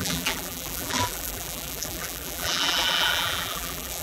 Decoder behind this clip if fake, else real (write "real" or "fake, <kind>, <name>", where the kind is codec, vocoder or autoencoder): fake, vocoder, BigVGAN v2